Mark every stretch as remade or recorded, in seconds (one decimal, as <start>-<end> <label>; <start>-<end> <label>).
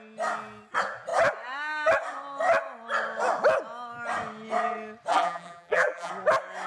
0.0-5.1 recorded; 5.1-6.1 remade; 6.1-6.7 recorded